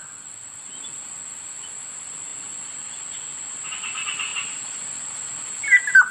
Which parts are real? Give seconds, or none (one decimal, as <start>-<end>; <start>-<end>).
0.0-6.1